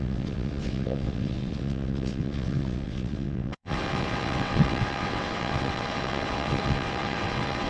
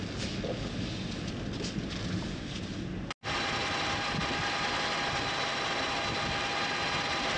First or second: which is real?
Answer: second